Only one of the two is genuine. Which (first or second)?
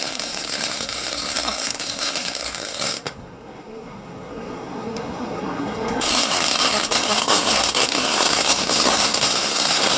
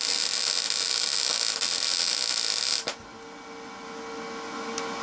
second